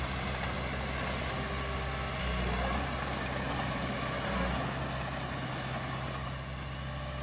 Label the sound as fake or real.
real